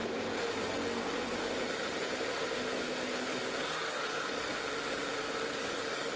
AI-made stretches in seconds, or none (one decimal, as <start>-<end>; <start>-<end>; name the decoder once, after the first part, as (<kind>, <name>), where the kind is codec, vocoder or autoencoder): 3.7-4.5 (codec, DAC); 5.6-6.2